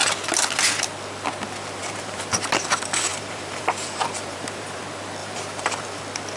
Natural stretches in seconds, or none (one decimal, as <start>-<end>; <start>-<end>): 0.0-1.8; 2.7-3.1; 4.8-5.2; 6.0-6.4